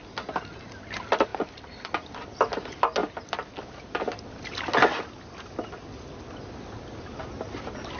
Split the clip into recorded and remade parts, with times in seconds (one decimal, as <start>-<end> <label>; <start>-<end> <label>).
0.0-8.0 recorded